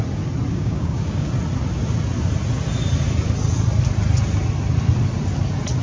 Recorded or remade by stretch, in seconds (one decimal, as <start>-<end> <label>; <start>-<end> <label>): 0.0-0.5 recorded; 0.5-1.3 remade; 1.3-5.8 recorded